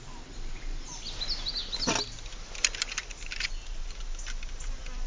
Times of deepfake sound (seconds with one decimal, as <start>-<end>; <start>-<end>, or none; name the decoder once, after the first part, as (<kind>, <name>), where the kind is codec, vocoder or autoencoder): none